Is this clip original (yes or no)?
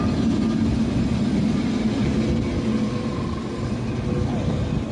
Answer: yes